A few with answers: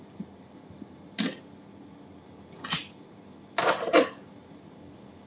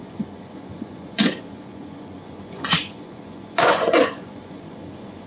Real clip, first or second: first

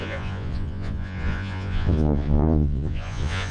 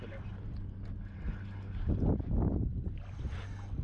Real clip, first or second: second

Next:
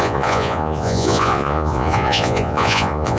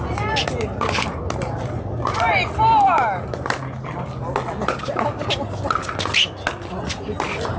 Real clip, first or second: second